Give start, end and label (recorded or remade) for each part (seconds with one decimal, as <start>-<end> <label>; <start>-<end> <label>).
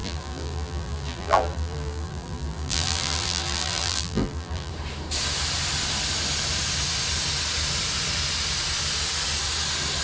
0.0-4.7 remade; 4.7-10.0 recorded